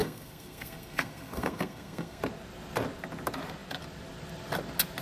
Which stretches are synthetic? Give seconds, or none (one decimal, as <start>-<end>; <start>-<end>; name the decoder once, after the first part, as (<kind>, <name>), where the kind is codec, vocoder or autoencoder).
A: 0.0-2.2 (codec, SNAC)